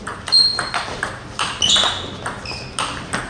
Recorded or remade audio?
recorded